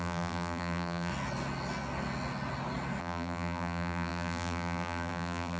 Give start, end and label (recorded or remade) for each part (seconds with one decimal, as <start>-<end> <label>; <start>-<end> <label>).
0.0-1.1 remade; 1.1-3.0 recorded; 3.0-5.6 remade

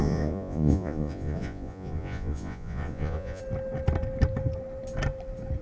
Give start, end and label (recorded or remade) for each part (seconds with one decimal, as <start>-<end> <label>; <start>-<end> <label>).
0.0-3.4 remade; 3.4-5.6 recorded

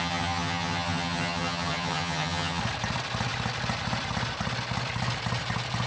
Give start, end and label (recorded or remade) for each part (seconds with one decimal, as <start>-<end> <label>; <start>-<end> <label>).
0.0-2.6 remade; 2.6-5.9 recorded

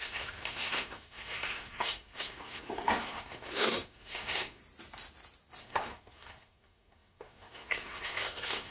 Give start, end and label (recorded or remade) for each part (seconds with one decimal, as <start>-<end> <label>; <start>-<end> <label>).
0.0-4.6 remade; 4.6-5.6 recorded; 5.6-8.7 remade

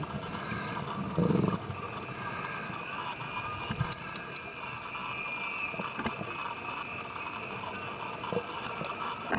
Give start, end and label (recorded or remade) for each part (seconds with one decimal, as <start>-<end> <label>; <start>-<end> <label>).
0.0-9.4 recorded

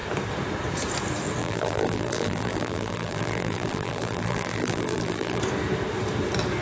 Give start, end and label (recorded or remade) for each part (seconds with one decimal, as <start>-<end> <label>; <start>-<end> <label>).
0.0-1.4 recorded; 1.4-5.4 remade; 5.4-6.6 recorded

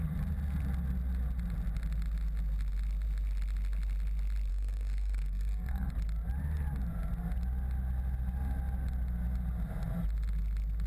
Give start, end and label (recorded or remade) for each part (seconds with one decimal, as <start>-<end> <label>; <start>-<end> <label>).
0.0-4.5 recorded; 4.5-5.9 remade; 5.9-10.9 recorded